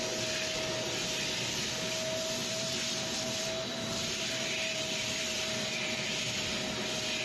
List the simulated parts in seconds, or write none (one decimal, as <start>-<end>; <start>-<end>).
2.4-6.7